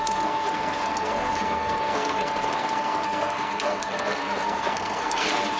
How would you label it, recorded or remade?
remade